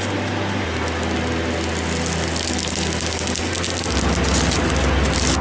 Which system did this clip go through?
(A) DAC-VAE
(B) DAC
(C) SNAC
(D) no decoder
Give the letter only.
D